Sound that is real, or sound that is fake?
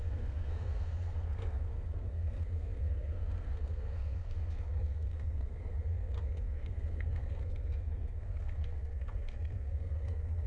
fake